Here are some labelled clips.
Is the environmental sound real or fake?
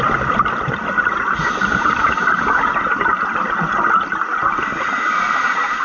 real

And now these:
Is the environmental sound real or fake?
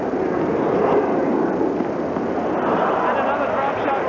real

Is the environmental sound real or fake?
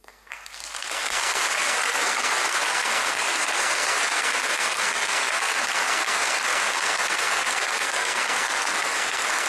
fake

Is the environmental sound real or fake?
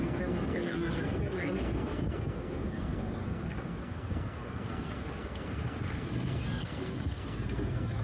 fake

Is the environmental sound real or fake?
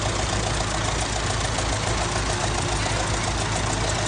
real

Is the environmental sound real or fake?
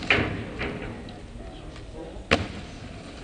real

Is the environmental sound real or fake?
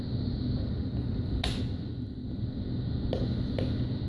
real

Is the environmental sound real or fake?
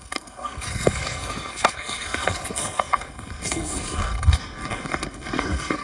fake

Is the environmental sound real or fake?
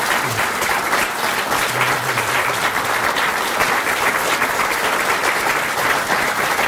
real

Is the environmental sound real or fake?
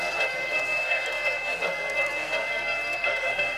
fake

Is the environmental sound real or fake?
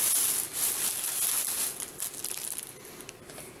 real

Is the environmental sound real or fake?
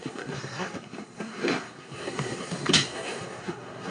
fake